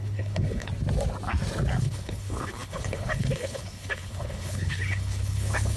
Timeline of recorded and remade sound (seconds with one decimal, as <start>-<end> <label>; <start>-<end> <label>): 0.0-0.7 remade; 0.7-1.8 recorded; 1.8-5.8 remade